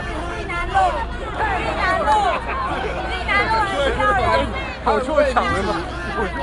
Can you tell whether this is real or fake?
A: real